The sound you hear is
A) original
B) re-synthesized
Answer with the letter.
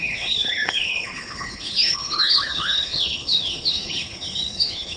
B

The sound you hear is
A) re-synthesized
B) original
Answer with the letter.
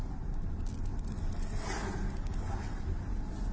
B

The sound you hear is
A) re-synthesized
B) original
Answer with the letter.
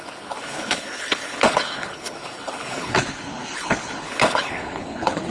A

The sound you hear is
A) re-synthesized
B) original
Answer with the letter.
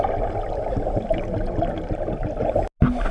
B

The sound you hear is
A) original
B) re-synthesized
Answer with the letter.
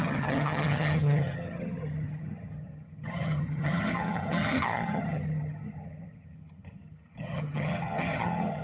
B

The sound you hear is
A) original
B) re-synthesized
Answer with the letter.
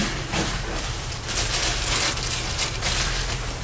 A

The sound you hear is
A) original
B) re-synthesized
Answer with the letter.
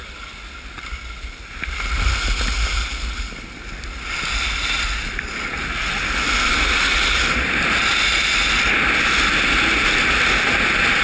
A